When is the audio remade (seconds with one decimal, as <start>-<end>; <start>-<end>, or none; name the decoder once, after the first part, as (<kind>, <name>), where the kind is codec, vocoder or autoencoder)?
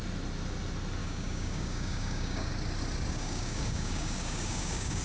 1.0-2.5 (codec, DAC); 3.1-5.0